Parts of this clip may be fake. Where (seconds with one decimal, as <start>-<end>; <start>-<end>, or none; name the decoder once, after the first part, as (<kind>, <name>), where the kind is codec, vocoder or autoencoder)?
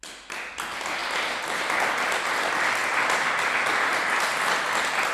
none